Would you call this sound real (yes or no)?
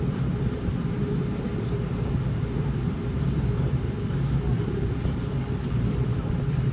no